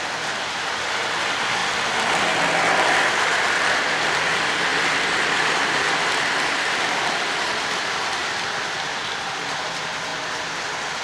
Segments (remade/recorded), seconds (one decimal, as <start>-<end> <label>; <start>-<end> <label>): 0.0-1.6 remade; 1.6-2.9 recorded; 2.9-4.7 remade; 4.7-6.4 recorded; 6.4-10.1 remade; 10.1-11.0 recorded